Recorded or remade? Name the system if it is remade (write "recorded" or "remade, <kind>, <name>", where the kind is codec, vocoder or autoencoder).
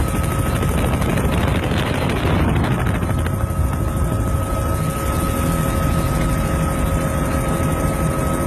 recorded